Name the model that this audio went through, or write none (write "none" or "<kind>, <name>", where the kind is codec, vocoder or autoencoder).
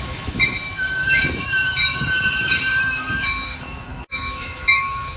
autoencoder, DAC-VAE